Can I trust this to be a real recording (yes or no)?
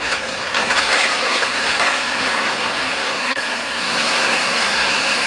no